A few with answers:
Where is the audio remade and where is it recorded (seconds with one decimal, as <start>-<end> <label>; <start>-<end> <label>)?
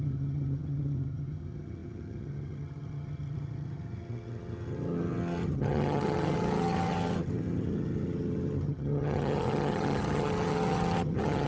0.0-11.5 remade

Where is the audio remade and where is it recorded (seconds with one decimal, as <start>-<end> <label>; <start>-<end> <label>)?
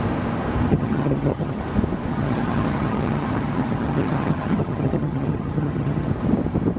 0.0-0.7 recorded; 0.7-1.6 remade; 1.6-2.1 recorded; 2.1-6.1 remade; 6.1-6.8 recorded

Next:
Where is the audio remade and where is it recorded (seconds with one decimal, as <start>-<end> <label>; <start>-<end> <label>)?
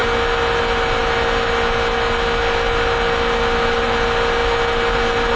0.0-5.4 recorded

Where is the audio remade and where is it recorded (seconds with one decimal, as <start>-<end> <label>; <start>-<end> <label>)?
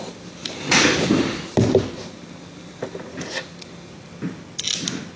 0.0-5.2 recorded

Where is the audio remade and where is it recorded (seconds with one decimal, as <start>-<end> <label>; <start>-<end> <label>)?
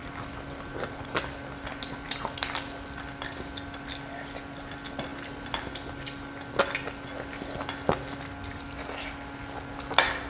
0.0-10.3 recorded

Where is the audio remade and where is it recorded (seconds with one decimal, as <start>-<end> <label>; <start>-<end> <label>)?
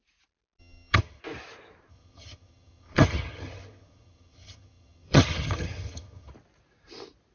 0.0-0.6 recorded; 0.6-1.2 remade; 1.2-1.9 recorded; 1.9-6.3 remade; 6.3-7.3 recorded